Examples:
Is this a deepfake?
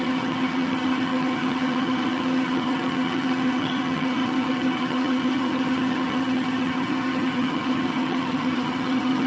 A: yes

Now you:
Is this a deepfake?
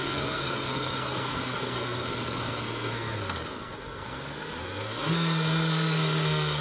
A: yes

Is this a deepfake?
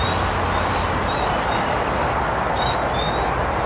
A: no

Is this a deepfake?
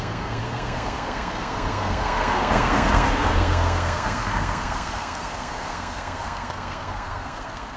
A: yes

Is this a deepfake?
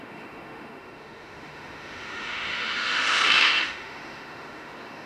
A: yes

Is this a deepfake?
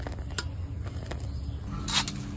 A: no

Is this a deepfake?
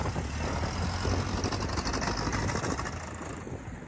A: no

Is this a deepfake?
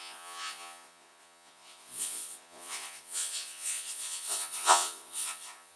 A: yes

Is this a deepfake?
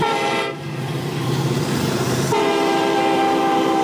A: yes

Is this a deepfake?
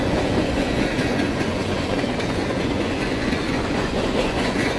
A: yes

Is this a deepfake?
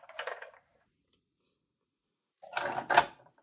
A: no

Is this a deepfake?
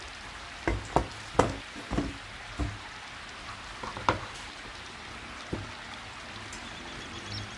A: no